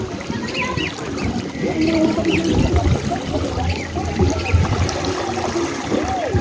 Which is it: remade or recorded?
recorded